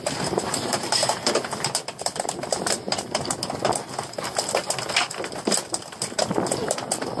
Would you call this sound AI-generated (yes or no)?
no